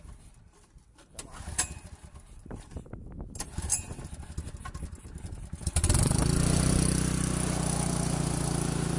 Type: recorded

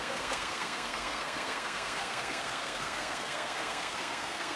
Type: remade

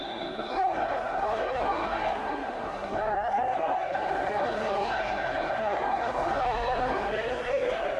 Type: remade